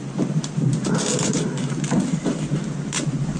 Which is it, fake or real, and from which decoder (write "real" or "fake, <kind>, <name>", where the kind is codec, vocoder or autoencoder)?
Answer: real